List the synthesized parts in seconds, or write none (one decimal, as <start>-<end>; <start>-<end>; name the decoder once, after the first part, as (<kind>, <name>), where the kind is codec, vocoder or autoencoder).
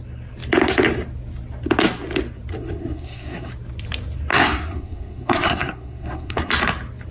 2.5-3.5 (codec, SNAC); 4.3-6.5